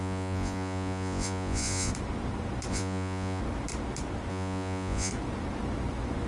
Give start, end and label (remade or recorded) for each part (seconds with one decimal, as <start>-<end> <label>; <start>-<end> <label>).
0.0-1.9 remade; 1.9-2.7 recorded; 2.7-3.4 remade; 3.4-4.3 recorded; 4.3-5.1 remade; 5.1-6.3 recorded